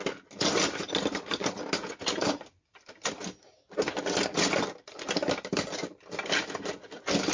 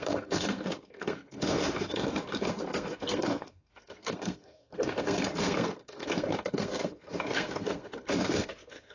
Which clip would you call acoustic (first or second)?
first